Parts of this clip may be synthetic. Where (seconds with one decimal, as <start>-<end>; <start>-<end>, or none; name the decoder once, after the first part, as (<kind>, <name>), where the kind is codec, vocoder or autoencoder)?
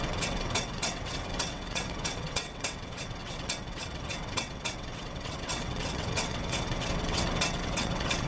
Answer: 0.0-8.3 (vocoder, WaveNeXt)